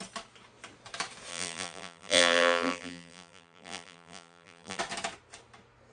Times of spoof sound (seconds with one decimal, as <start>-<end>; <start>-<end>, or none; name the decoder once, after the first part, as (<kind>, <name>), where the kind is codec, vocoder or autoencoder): 1.3-4.8 (vocoder, BigVGAN v2)